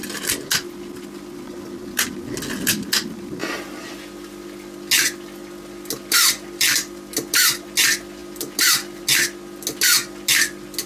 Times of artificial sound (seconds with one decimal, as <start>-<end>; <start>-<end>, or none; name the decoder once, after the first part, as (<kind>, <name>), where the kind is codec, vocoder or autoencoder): none